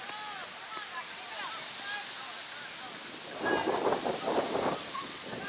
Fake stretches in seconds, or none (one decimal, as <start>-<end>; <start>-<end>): none